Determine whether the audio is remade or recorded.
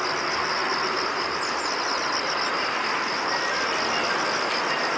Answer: recorded